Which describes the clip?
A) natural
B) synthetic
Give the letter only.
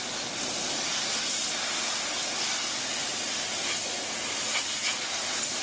A